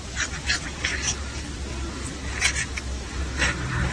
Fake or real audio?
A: real